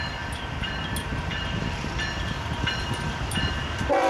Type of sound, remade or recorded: remade